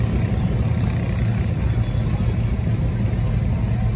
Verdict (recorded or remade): recorded